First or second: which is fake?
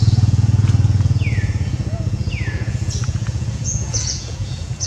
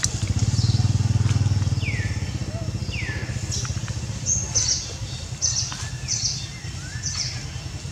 first